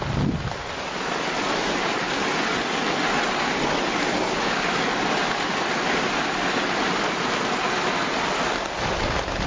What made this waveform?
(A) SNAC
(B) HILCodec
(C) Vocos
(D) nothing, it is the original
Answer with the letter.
D